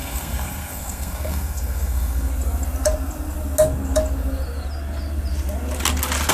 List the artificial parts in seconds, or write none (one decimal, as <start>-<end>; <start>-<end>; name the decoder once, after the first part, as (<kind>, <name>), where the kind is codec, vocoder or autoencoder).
0.0-2.3 (codec, SNAC)